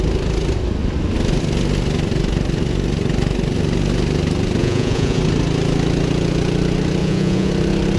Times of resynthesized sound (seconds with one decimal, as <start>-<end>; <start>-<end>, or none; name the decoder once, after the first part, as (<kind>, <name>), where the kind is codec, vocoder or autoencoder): 4.6-5.2 (vocoder, Vocos); 7.0-7.5